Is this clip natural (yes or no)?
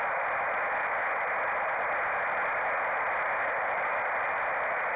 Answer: yes